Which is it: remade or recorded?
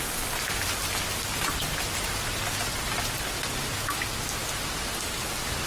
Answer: recorded